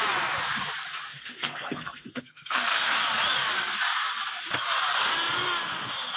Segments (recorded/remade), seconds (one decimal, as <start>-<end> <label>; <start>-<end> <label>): 0.0-1.1 recorded; 1.1-2.9 remade; 2.9-6.2 recorded